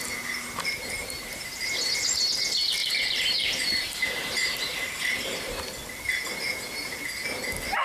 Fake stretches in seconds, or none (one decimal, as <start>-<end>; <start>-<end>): 1.0-1.8; 2.8-5.6